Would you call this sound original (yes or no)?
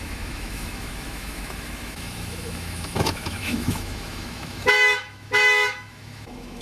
no